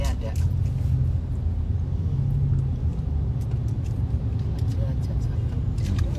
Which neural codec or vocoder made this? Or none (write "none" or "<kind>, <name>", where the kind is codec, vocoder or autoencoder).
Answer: none